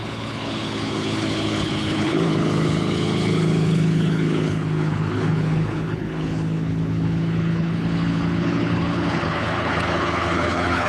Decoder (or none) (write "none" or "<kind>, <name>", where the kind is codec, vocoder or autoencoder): codec, HILCodec